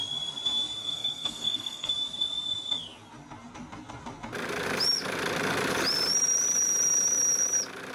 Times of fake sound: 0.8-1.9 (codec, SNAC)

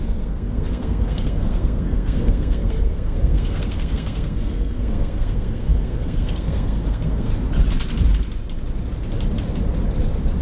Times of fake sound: 0.0-7.3 (codec, SNAC)

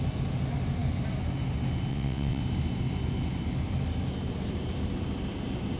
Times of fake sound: 1.9-2.4 (vocoder, WaveNeXt)

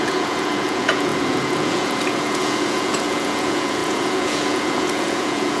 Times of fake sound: 0.0-5.6 (vocoder, Vocos)

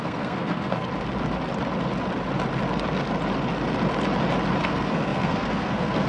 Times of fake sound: 0.0-0.9 (codec, SNAC); 4.6-6.1

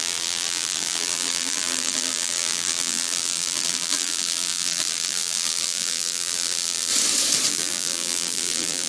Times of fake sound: 0.0-6.9 (vocoder, BigVGAN v2); 7.5-8.9